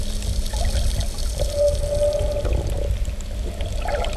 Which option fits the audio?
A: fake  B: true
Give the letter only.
B